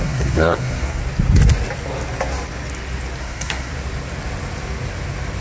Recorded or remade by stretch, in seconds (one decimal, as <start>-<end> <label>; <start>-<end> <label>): 0.0-1.0 remade; 1.0-3.2 recorded; 3.2-3.7 remade; 3.7-5.4 recorded